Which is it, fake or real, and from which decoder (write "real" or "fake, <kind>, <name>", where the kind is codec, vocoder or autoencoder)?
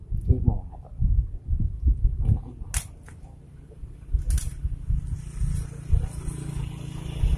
real